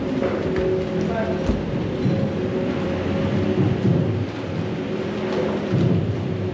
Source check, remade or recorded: recorded